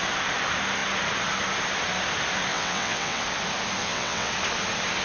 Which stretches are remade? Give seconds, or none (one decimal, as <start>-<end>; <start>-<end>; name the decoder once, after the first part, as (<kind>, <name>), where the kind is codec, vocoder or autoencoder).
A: 2.5-3.2 (vocoder, WaveNeXt); 3.8-4.3